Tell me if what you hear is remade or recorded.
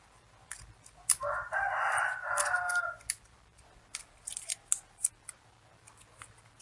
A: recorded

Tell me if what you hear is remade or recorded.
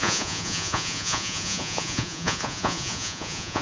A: remade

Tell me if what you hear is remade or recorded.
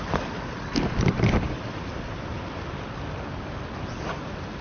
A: recorded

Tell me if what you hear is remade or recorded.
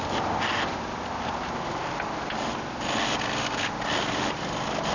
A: recorded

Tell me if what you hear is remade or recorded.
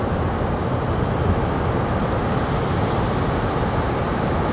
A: recorded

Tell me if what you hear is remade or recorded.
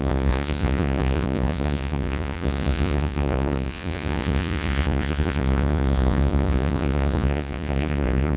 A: remade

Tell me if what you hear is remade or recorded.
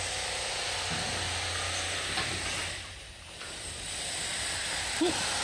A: recorded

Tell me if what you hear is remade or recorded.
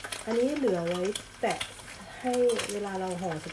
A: recorded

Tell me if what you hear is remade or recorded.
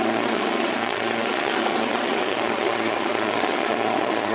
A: remade